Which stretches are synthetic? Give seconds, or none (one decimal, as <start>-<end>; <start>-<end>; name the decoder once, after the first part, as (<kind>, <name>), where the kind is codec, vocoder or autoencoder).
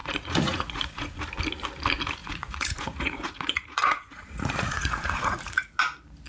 0.0-1.2 (vocoder, Vocos); 2.2-5.8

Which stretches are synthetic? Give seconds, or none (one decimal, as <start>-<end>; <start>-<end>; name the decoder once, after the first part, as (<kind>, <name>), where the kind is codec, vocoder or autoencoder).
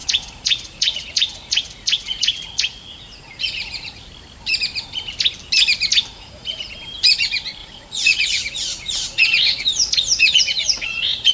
0.0-4.1 (vocoder, Vocos); 6.1-6.7; 7.6-11.3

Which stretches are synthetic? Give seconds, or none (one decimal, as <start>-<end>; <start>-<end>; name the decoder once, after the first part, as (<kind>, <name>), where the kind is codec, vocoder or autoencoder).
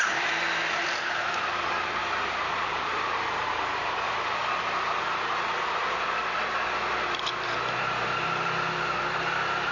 none